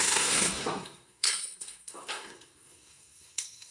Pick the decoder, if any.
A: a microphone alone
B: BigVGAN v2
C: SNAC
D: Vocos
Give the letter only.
C